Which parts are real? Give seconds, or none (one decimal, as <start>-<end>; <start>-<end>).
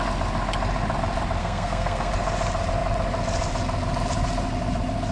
0.0-1.4; 2.1-5.1